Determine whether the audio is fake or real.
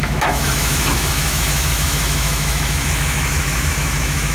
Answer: fake